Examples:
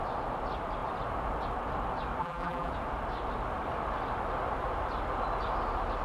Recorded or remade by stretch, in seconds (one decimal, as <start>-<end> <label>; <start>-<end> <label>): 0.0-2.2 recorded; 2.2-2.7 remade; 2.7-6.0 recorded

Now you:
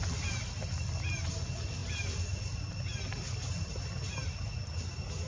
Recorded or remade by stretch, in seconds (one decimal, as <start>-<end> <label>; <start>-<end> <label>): 0.0-5.3 recorded

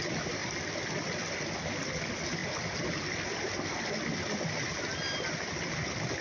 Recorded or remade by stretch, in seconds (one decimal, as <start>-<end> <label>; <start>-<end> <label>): 0.0-6.2 recorded